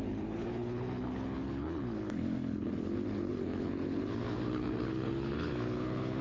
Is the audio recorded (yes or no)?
no